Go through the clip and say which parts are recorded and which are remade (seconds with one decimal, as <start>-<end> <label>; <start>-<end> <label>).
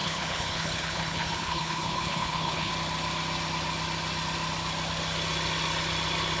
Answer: 0.0-2.7 remade; 2.7-6.4 recorded